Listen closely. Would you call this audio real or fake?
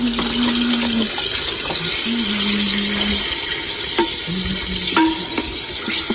real